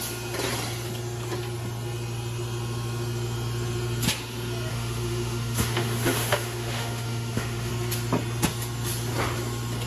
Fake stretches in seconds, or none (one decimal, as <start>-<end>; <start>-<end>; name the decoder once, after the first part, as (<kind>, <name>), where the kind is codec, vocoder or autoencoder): 4.7-7.7 (autoencoder, DAC-VAE)